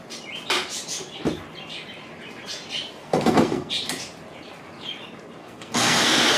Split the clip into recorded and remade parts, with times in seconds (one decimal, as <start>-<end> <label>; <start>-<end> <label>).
0.0-3.0 recorded; 3.0-3.7 remade; 3.7-5.4 recorded; 5.4-6.4 remade